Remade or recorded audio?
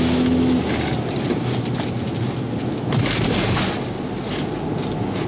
recorded